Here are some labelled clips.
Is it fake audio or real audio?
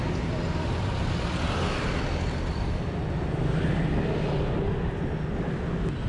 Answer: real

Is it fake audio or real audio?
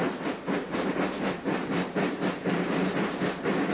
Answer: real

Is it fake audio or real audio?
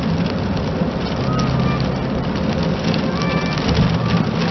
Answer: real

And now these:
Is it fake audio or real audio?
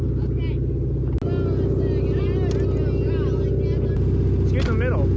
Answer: real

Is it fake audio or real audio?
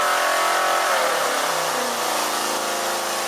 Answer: real